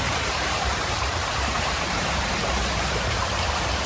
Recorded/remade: remade